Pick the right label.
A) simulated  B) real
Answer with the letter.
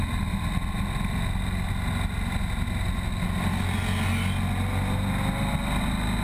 B